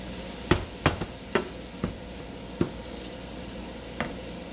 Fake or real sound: real